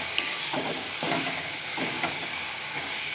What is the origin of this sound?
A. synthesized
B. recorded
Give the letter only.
A